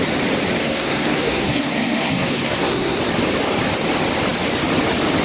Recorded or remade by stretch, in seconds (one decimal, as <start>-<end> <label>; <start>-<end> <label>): 0.0-0.6 recorded; 0.6-3.0 remade; 3.0-5.2 recorded

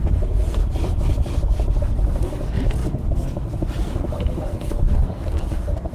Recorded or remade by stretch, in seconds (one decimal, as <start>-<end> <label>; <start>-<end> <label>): 0.0-0.6 remade; 0.6-1.8 recorded; 1.8-5.9 remade

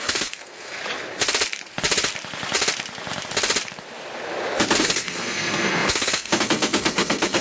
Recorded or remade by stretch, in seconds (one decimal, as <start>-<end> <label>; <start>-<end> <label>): 0.0-0.8 remade; 0.8-4.8 recorded; 4.8-7.4 remade

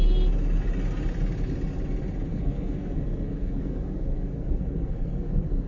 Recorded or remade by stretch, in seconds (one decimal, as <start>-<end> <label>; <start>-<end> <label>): 0.0-2.3 recorded; 2.3-5.7 remade

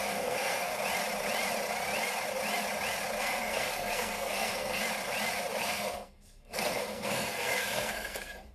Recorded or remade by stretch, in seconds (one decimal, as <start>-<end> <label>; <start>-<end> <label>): 0.0-0.7 remade; 0.7-3.2 recorded; 3.2-4.8 remade; 4.8-5.6 recorded; 5.6-8.5 remade